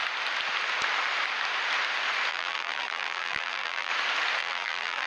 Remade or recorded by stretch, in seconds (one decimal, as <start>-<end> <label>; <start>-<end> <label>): 0.0-2.3 recorded; 2.3-3.9 remade; 3.9-4.4 recorded; 4.4-5.1 remade